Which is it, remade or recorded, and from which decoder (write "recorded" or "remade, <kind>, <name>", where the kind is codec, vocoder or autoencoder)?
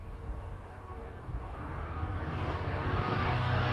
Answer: remade, codec, DAC